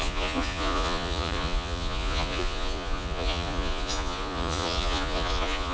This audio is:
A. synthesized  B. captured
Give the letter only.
A